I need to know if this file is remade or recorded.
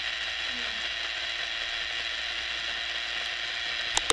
recorded